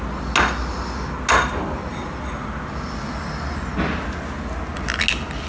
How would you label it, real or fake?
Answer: real